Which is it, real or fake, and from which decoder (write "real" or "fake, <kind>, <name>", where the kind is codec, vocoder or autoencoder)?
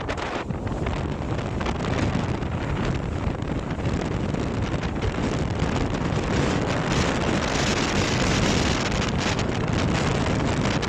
real